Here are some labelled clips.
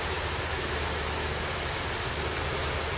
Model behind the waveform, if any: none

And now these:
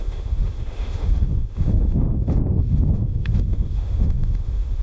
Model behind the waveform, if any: autoencoder, DAC-VAE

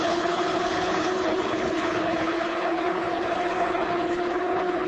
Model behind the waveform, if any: codec, HILCodec